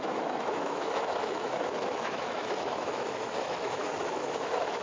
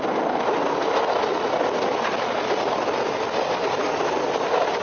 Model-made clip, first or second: first